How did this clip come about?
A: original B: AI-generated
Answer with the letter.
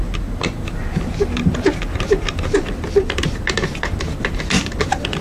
A